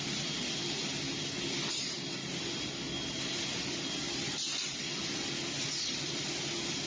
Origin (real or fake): real